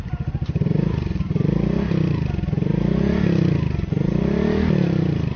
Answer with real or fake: real